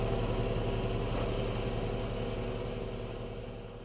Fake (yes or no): no